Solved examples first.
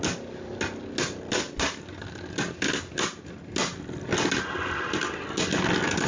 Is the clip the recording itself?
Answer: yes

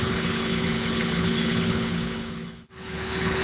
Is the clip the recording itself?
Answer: no